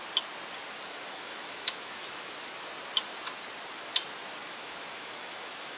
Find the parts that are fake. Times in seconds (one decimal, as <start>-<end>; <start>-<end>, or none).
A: 1.0-2.3; 4.4-5.8